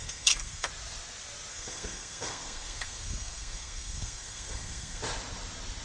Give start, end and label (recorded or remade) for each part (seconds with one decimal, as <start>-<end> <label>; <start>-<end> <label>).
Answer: 0.0-0.7 remade; 0.7-1.5 recorded; 1.5-5.0 remade; 5.0-5.8 recorded